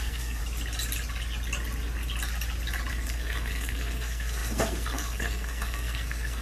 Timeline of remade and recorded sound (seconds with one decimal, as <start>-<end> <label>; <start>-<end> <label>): 0.0-0.4 remade; 0.4-2.9 recorded; 2.9-6.4 remade